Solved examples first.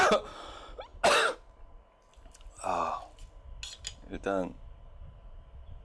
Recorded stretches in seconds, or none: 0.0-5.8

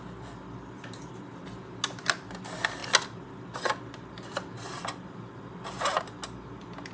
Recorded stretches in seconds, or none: 0.0-6.9